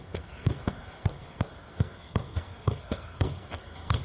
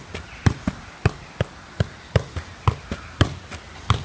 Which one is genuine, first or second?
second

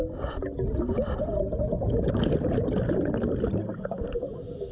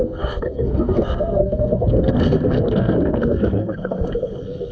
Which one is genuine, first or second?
first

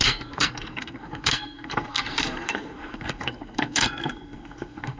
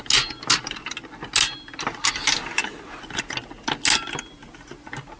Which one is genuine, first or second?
second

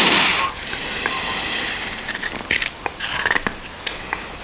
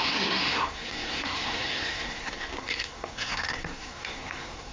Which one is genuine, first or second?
first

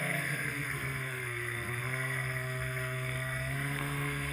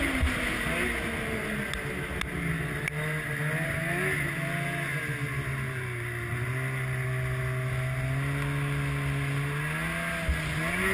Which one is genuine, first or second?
second